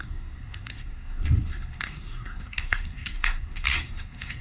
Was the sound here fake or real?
fake